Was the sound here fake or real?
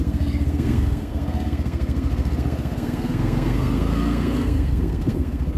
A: fake